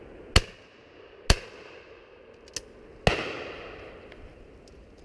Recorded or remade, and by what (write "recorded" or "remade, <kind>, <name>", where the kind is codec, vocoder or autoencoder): recorded